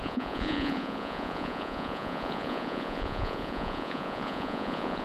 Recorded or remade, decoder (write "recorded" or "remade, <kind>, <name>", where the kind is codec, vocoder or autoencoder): remade, vocoder, Vocos